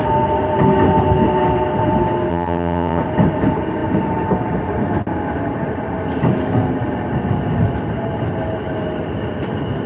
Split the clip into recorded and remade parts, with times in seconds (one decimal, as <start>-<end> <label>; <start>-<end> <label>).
0.0-2.3 recorded; 2.3-3.0 remade; 3.0-9.9 recorded